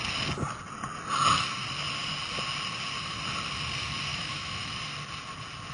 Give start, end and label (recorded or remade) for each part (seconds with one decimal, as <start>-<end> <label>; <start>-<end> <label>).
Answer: 0.0-4.1 recorded; 4.1-4.7 remade; 4.7-5.7 recorded